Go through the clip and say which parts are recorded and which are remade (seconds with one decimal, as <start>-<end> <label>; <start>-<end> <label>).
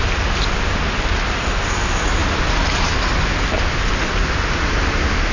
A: 0.0-5.3 recorded